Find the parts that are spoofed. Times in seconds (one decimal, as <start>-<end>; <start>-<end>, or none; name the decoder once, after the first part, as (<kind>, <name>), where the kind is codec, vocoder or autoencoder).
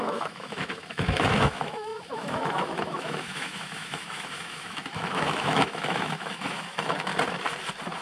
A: 0.0-7.1 (autoencoder, DAC-VAE)